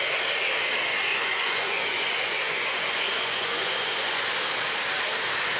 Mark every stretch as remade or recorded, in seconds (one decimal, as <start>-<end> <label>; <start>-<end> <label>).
0.0-1.1 recorded; 1.1-4.2 remade; 4.2-5.6 recorded